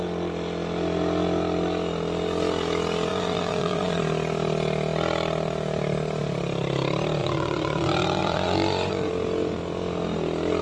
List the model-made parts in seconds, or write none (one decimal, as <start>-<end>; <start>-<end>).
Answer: 3.1-4.0; 7.2-9.1